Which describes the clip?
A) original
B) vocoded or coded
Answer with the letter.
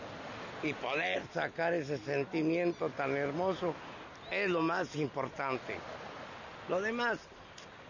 A